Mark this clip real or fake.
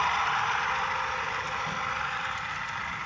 real